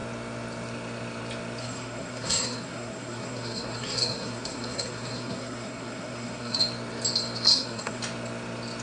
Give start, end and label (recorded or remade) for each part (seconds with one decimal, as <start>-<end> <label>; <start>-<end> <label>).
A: 0.0-1.6 recorded; 1.6-6.6 remade; 6.6-7.5 recorded; 7.5-8.0 remade; 8.0-8.8 recorded